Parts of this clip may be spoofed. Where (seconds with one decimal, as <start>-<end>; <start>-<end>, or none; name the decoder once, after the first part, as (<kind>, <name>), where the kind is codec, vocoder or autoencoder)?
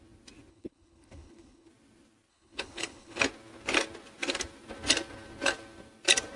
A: 0.5-1.7 (codec, HILCodec); 2.3-3.2